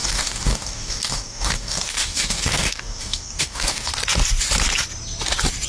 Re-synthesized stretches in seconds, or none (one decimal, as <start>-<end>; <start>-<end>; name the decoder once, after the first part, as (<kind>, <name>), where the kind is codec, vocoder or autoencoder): 0.0-3.9 (codec, DAC)